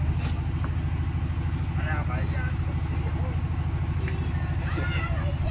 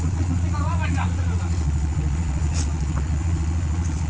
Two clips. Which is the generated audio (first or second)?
second